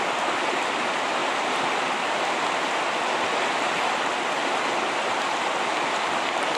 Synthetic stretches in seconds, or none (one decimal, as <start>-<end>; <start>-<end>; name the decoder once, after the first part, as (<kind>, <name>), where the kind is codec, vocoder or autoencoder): none